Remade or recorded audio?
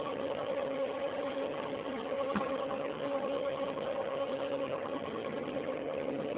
remade